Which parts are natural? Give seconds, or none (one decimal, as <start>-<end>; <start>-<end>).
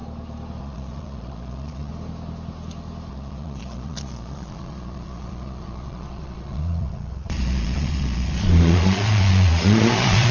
0.0-0.6; 1.9-3.1